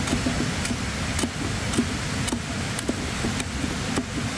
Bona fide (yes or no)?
yes